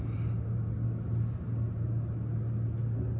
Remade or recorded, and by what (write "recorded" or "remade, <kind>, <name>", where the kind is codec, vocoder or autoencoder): recorded